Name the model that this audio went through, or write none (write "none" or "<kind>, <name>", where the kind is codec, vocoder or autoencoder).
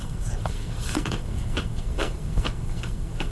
codec, SNAC